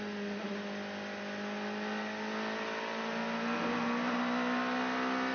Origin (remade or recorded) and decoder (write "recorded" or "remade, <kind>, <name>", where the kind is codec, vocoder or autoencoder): recorded